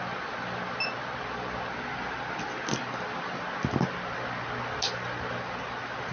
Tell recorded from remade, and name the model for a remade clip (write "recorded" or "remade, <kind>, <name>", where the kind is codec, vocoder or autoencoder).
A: recorded